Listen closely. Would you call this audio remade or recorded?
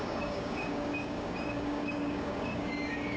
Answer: remade